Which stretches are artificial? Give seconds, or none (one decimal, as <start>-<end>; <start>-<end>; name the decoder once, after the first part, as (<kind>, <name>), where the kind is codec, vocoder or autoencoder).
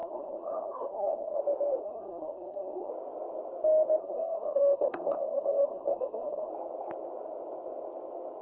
0.0-1.4 (codec, SNAC); 1.8-2.9; 4.0-6.5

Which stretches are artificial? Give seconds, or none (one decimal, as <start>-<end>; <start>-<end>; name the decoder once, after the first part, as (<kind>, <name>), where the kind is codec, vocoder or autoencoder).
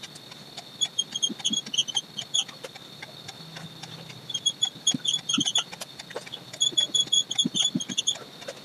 none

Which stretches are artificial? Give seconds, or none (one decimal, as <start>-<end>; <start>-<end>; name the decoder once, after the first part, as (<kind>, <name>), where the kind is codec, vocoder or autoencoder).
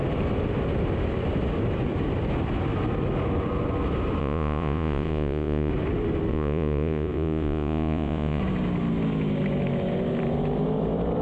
4.2-5.7 (vocoder, Vocos); 6.3-8.4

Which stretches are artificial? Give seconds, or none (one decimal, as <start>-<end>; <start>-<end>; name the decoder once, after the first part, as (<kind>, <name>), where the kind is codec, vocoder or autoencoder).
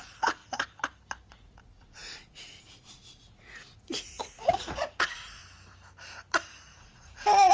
0.0-0.4 (vocoder, Vocos); 1.3-5.4; 6.8-7.5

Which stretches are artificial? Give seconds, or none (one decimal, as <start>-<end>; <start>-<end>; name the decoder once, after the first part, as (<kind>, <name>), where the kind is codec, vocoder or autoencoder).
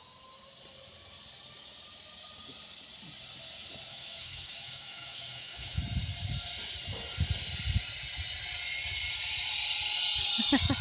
3.9-5.8 (autoencoder, DAC-VAE)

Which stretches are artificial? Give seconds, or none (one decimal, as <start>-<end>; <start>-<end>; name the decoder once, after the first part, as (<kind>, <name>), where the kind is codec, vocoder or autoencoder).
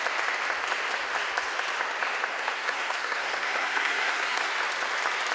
2.3-4.5 (codec, SNAC)